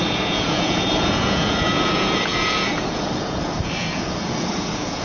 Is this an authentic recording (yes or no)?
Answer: no